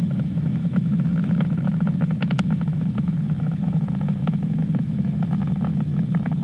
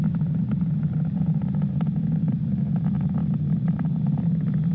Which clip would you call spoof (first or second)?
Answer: first